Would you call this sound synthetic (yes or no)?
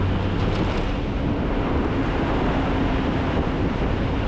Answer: no